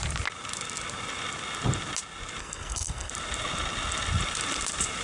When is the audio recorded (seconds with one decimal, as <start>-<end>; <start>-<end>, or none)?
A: 0.0-2.4; 3.1-5.0